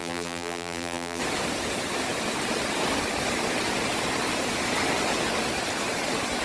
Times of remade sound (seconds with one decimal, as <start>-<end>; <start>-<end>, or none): 0.0-1.2